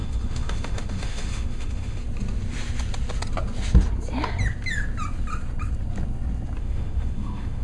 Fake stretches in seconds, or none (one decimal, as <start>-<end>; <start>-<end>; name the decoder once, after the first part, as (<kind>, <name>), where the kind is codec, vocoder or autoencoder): 0.0-2.0 (autoencoder, DAC-VAE); 6.6-7.6